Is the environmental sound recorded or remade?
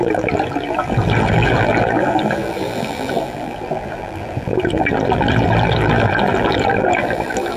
remade